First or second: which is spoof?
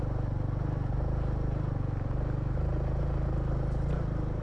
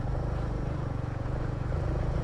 second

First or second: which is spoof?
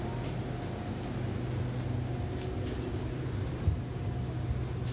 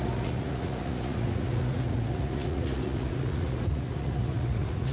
second